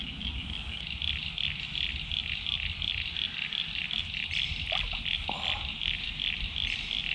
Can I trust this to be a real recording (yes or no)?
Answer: yes